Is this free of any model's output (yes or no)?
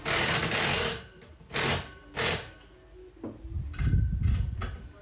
yes